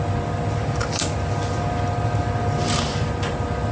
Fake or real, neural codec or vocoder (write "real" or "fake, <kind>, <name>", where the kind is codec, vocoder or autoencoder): real